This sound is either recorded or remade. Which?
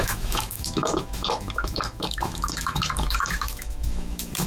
remade